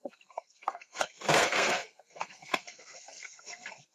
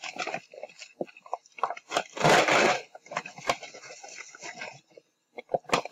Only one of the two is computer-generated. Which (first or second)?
first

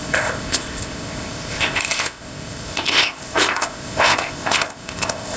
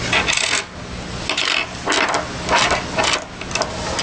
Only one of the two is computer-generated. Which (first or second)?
first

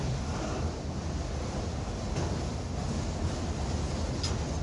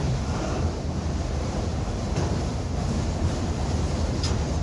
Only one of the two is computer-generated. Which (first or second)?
second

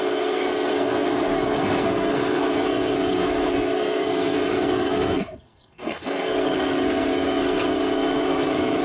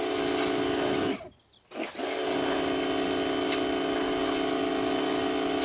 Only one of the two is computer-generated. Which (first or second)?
first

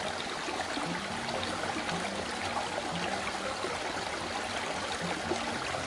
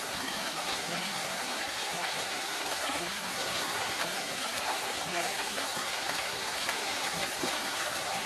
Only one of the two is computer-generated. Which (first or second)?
second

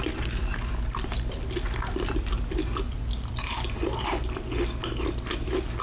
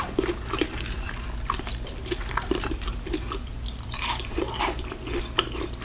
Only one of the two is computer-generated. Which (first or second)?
second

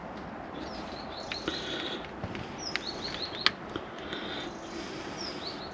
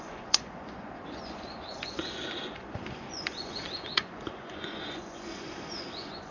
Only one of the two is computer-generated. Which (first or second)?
second